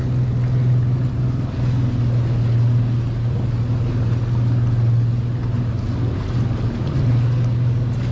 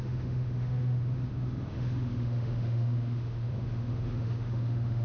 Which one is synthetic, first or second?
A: second